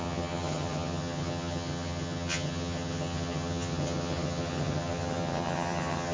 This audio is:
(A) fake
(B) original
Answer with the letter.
A